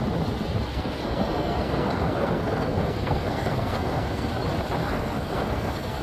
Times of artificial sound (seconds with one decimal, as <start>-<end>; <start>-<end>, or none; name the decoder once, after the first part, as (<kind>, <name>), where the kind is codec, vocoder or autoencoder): 0.7-4.3 (codec, SNAC); 4.8-6.0